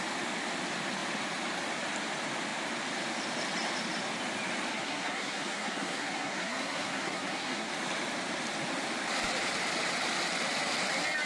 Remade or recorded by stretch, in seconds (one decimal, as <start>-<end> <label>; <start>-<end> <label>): 0.0-4.7 recorded; 4.7-7.7 remade; 7.7-11.3 recorded